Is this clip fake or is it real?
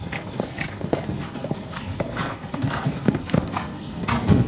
fake